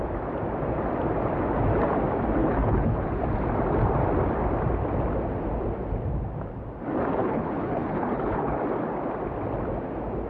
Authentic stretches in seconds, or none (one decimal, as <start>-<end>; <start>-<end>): 0.0-2.4; 3.2-7.2; 8.6-10.3